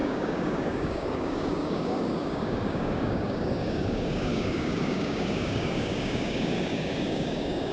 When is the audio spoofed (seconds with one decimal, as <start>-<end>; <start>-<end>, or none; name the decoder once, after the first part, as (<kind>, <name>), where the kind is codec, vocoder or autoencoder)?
0.0-7.7 (codec, DAC)

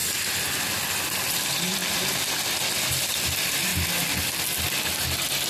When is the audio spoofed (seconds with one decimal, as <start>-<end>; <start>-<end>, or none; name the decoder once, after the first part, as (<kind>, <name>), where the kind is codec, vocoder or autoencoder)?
0.6-1.8 (vocoder, BigVGAN v2); 3.3-3.7; 4.2-5.5